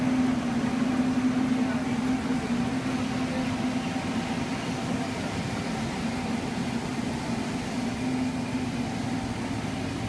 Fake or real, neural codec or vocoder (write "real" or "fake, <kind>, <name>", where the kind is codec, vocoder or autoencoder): real